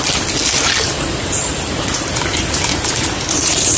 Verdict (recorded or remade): recorded